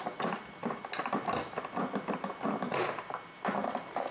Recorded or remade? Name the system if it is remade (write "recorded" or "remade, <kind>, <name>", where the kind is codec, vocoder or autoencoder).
recorded